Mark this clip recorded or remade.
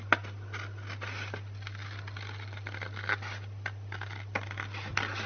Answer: recorded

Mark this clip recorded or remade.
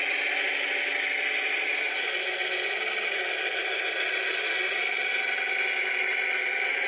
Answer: recorded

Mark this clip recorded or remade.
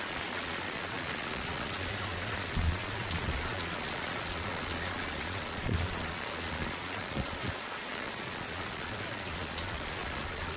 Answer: remade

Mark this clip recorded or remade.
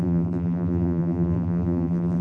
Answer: remade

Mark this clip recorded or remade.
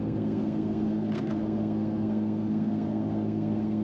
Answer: remade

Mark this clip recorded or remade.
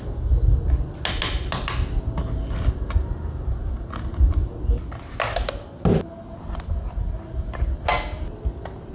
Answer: recorded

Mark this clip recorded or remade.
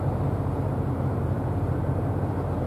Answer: remade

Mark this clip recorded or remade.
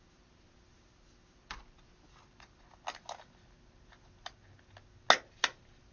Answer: recorded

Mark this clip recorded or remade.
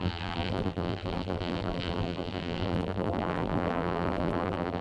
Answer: remade